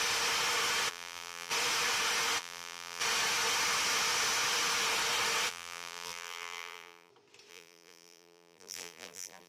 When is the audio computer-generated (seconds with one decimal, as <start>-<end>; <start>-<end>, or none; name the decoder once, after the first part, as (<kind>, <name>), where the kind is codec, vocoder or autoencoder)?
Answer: 0.9-1.5 (vocoder, BigVGAN v2); 2.4-3.0; 5.5-7.1; 7.5-9.5